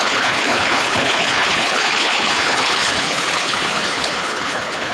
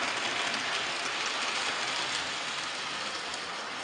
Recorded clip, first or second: second